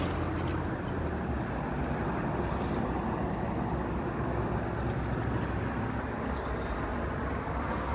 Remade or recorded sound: recorded